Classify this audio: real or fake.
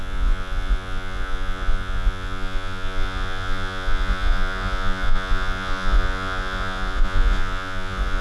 fake